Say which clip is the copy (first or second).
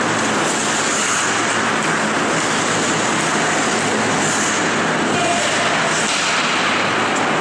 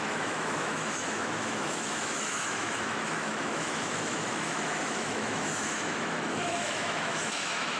second